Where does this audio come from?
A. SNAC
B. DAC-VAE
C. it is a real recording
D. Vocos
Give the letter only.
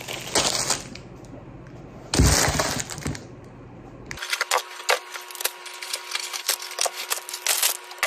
C